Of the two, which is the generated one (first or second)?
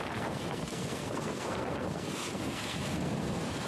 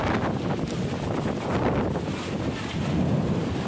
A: first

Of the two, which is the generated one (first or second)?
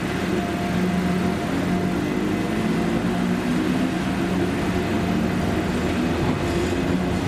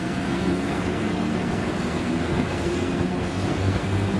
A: second